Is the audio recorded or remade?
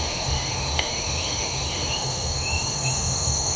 remade